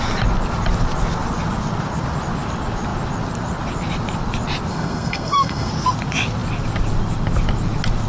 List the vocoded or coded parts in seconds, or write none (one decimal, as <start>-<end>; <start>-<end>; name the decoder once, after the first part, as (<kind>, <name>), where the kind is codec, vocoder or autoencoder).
4.7-5.7 (codec, SNAC)

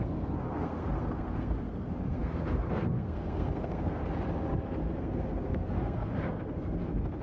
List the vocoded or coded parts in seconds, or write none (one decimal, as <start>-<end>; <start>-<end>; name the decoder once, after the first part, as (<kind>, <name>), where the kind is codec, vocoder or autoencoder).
0.0-4.0 (codec, SNAC); 4.6-7.2

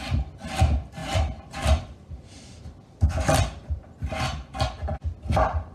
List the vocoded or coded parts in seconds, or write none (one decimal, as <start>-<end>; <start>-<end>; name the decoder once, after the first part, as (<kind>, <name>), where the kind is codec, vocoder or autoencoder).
1.0-4.1 (vocoder, BigVGAN v2)

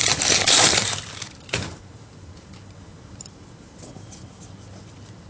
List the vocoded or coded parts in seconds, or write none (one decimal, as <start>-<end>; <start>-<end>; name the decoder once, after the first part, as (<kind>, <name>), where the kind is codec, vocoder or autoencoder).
0.0-3.2 (vocoder, BigVGAN v2)

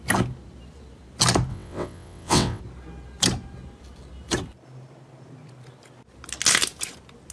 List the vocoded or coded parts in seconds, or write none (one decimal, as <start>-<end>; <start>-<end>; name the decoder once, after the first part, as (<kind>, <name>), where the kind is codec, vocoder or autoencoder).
1.5-2.6 (vocoder, WaveNeXt)